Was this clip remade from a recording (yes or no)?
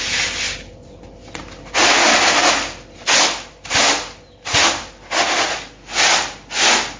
no